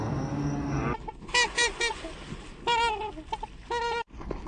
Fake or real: real